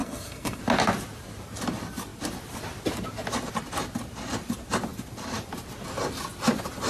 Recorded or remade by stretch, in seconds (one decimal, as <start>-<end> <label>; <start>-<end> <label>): 0.0-0.6 remade; 0.6-6.9 recorded